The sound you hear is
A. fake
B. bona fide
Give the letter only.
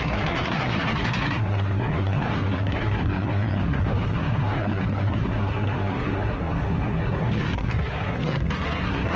A